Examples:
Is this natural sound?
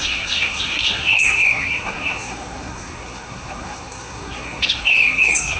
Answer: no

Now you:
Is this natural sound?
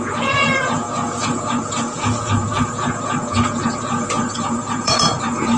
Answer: no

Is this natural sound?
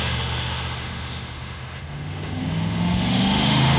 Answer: no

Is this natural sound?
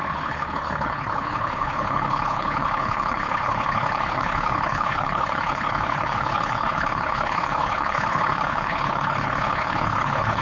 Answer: no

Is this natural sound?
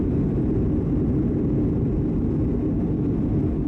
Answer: yes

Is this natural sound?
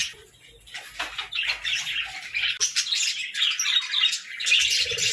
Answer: yes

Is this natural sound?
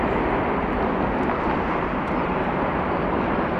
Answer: yes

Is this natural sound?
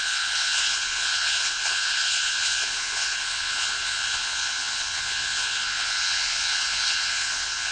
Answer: no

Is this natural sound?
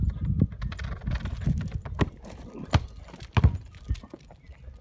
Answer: yes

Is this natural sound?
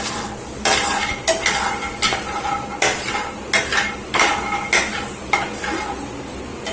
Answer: yes